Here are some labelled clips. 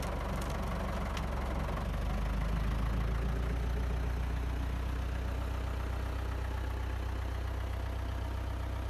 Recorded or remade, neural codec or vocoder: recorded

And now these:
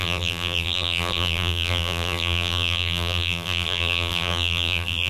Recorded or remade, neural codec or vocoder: remade, vocoder, BigVGAN v2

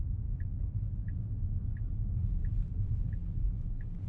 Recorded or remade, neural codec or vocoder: recorded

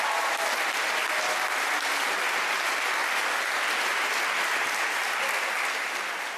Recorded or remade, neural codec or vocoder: recorded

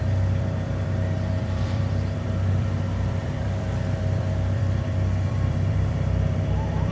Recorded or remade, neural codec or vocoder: remade, vocoder, BigVGAN v2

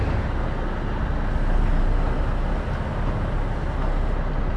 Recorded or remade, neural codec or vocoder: recorded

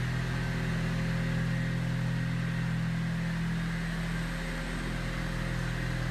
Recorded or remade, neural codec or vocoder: recorded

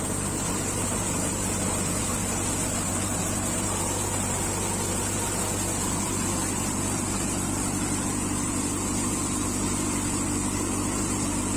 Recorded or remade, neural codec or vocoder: remade, vocoder, BigVGAN v2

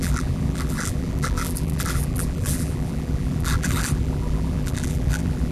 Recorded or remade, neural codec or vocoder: remade, vocoder, BigVGAN v2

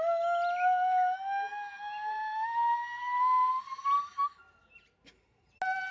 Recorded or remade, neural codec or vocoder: recorded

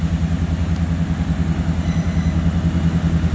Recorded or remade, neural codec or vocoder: recorded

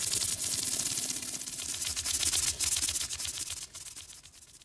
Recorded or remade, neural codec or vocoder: recorded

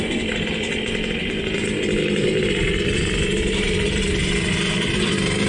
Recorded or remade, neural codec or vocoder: recorded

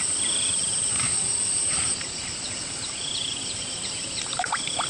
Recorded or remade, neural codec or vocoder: remade, vocoder, BigVGAN v2